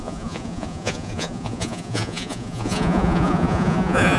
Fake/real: fake